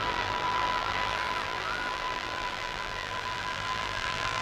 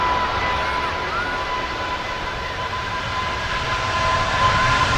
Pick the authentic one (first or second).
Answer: second